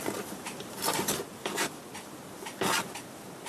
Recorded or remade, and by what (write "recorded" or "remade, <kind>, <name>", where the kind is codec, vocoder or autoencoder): recorded